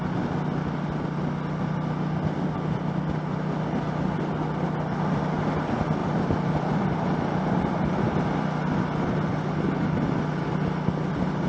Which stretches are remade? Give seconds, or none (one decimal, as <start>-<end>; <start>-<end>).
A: 6.0-8.1